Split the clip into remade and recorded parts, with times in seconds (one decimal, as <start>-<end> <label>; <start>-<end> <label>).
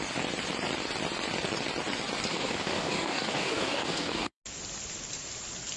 0.0-2.3 recorded; 2.3-4.4 remade; 4.4-5.8 recorded